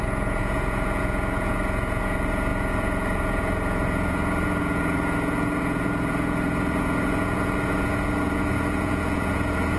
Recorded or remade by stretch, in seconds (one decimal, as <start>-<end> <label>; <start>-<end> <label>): 0.0-9.8 remade